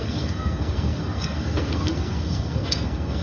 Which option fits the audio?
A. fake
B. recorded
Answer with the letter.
A